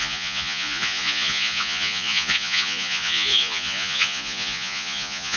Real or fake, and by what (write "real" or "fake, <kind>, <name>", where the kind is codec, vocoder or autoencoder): fake, vocoder, Vocos